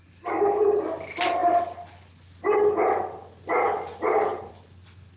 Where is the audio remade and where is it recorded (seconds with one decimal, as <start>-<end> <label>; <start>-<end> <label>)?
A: 0.0-5.2 recorded